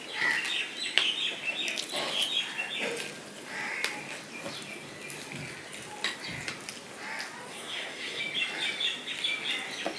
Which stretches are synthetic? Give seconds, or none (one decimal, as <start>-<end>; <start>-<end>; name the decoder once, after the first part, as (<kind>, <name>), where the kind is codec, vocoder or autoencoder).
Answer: 7.5-8.2 (codec, SNAC)